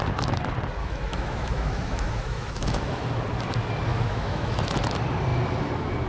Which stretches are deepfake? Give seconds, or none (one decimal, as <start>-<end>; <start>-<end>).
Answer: 0.8-3.1; 3.9-4.5